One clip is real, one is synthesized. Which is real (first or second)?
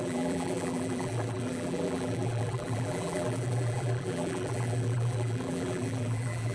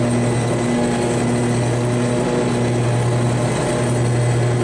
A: second